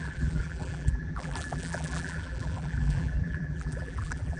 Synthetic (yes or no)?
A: yes